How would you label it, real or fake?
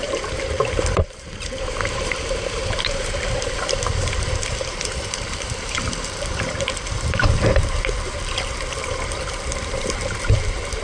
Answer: fake